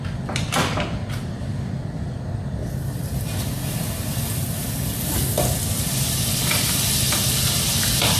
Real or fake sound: real